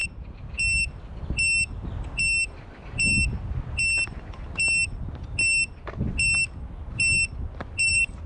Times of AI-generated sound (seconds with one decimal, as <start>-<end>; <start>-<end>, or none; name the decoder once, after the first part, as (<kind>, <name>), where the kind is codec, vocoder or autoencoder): none